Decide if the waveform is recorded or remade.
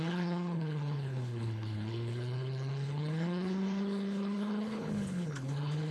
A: remade